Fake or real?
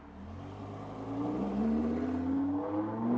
real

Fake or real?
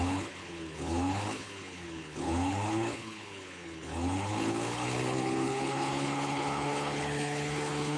fake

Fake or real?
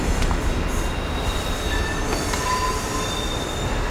real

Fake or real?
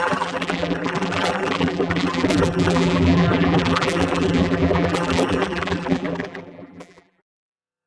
fake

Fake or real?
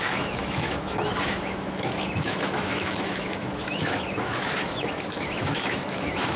fake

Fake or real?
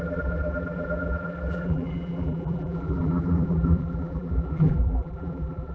fake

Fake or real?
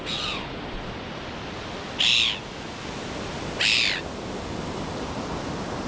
real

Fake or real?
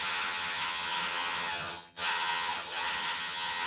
fake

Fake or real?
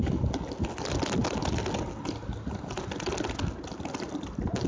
real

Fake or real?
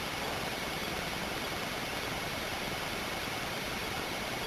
real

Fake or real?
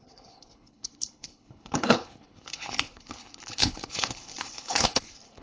fake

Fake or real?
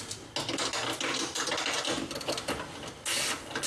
real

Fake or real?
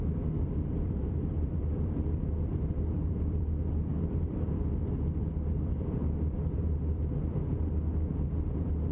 fake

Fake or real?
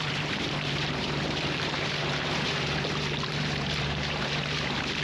fake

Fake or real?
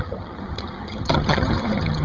fake